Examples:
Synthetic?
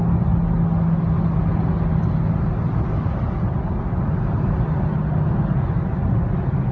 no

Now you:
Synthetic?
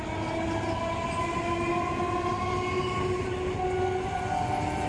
no